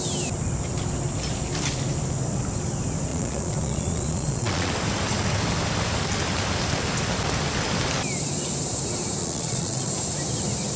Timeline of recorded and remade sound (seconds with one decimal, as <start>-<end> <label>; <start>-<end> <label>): 0.0-3.1 recorded; 3.1-4.7 remade; 4.7-9.2 recorded; 9.2-9.9 remade; 9.9-10.8 recorded